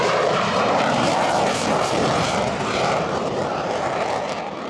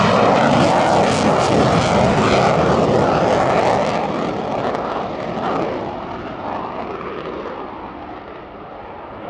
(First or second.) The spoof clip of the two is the first